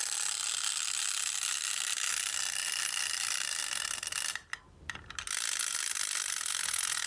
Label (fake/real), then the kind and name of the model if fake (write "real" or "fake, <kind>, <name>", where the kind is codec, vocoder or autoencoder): real